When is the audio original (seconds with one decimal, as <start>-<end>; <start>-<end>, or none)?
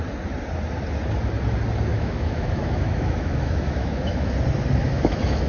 0.0-1.9; 4.3-4.8